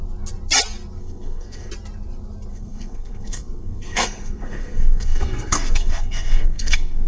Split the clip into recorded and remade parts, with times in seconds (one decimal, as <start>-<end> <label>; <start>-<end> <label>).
0.0-1.0 recorded; 1.0-1.7 remade; 1.7-2.5 recorded; 2.5-7.1 remade